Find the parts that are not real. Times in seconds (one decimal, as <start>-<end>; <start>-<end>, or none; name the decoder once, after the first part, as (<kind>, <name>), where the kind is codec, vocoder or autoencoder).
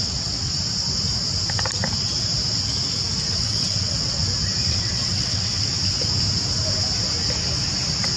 0.0-0.5 (vocoder, WaveNeXt); 3.3-4.2; 4.7-5.7